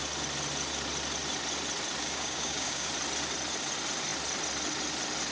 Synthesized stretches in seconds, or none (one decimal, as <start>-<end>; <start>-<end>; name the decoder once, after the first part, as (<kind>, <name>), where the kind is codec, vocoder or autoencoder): 2.0-2.9 (codec, DAC)